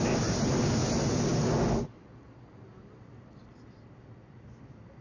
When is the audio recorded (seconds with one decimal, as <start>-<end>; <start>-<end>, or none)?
0.0-5.0